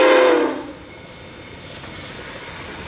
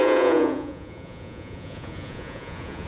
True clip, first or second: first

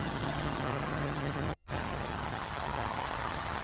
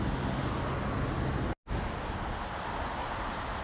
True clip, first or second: second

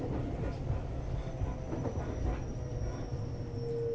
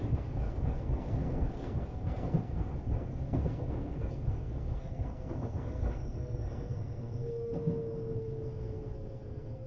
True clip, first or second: first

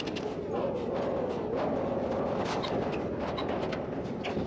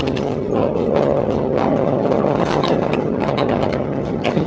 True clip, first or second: first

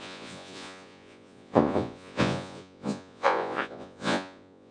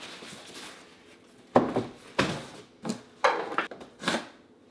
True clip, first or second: second